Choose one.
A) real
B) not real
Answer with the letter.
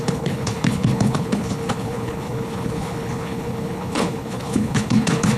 B